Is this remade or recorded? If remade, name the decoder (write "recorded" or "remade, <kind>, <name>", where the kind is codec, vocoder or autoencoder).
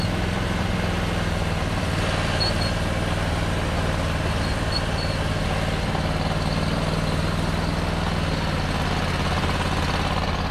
recorded